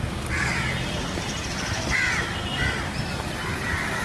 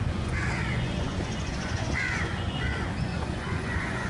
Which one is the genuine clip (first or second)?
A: first